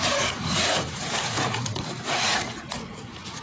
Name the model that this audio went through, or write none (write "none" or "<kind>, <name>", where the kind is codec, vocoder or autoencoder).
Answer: vocoder, Vocos